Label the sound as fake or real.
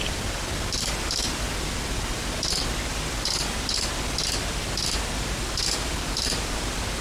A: fake